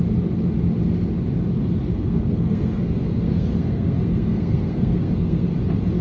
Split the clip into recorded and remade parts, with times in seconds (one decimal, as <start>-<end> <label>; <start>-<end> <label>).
0.0-1.9 recorded; 1.9-5.5 remade; 5.5-6.0 recorded